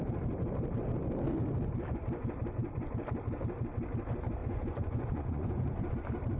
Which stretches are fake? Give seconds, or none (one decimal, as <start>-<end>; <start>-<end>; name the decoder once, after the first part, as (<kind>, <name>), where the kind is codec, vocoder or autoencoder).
4.4-5.9 (vocoder, Vocos)